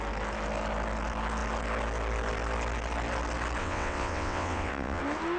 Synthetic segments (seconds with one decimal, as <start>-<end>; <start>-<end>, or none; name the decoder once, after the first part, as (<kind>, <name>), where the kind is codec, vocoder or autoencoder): 3.6-5.0 (vocoder, WaveNeXt)